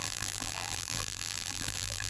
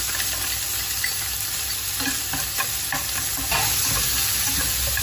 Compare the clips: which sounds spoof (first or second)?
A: first